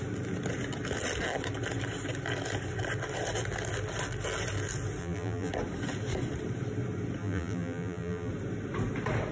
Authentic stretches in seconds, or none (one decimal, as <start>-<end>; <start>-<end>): 0.0-5.0; 5.5-7.2; 8.3-9.3